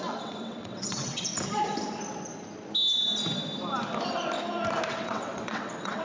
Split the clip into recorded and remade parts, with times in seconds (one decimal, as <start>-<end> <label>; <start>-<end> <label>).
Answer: 0.0-1.3 remade; 1.3-4.9 recorded; 4.9-6.0 remade